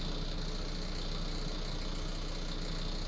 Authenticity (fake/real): real